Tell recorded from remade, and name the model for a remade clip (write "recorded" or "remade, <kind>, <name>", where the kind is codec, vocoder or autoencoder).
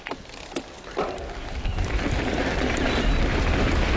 recorded